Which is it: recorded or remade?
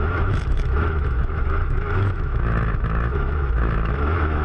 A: remade